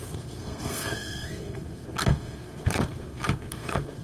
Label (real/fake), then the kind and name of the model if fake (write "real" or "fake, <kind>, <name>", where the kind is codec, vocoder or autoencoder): fake, codec, SNAC